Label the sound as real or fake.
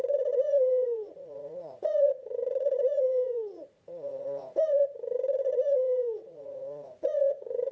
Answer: fake